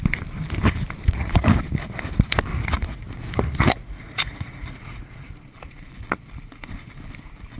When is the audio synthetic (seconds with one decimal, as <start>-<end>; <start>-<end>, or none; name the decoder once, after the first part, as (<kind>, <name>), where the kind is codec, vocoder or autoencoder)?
1.0-1.5 (vocoder, Vocos); 2.5-5.3